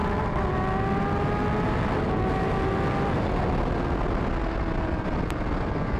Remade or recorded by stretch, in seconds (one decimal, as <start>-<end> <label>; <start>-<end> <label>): 0.0-6.0 recorded